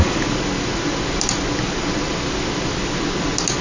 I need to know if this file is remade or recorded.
recorded